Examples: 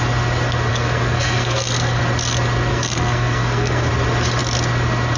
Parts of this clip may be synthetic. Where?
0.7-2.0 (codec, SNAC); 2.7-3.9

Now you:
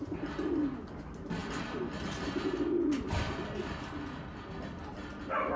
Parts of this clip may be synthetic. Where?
none

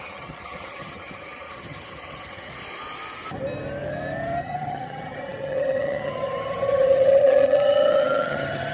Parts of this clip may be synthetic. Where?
0.0-2.5 (vocoder, HiFi-GAN); 4.4-8.7

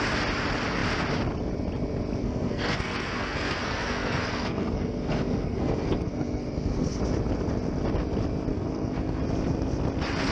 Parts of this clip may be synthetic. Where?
2.2-7.0 (codec, SNAC); 8.5-9.2